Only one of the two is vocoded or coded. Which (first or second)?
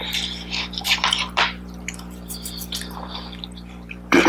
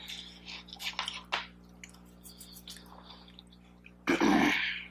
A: first